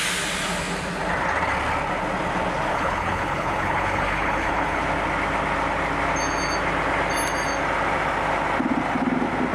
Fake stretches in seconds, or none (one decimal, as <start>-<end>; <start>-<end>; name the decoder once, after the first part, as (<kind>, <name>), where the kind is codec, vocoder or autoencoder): 2.7-4.8 (codec, HILCodec)

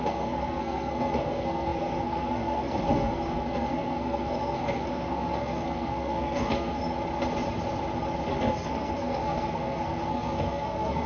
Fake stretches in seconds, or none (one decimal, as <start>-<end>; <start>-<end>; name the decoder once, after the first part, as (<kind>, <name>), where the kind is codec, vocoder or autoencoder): 0.0-6.8 (codec, SNAC); 8.3-11.1

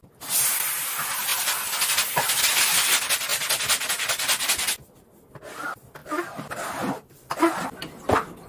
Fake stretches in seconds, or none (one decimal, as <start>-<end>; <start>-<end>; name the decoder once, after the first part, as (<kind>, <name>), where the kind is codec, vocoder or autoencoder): 6.0-7.4 (vocoder, BigVGAN v2)

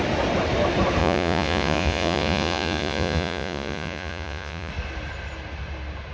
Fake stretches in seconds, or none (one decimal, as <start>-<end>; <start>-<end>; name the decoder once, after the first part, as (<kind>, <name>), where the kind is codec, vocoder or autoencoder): 1.0-4.7 (vocoder, Vocos)

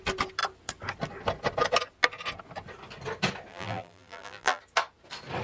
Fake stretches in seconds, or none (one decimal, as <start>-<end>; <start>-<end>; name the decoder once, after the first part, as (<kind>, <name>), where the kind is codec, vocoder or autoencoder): 3.5-4.6 (vocoder, BigVGAN v2)